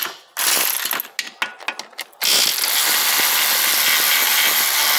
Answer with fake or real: real